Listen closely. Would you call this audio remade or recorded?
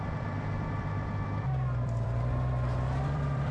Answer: remade